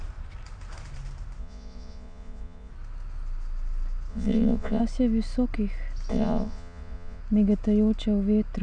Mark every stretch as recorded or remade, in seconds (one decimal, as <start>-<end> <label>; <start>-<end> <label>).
0.0-1.4 recorded; 1.4-2.7 remade; 2.7-4.1 recorded; 4.1-4.8 remade; 4.8-6.1 recorded; 6.1-7.2 remade; 7.2-8.6 recorded